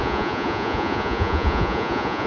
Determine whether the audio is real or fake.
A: fake